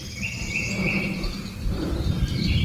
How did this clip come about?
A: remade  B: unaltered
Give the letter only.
A